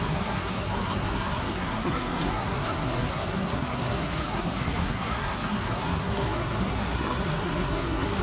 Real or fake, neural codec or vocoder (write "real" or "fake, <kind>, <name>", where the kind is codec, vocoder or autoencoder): fake, codec, SNAC